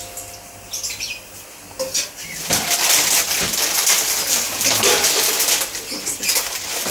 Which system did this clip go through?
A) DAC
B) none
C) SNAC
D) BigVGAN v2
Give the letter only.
B